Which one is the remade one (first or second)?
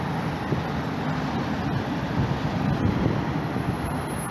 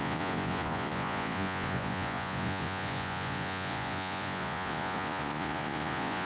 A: second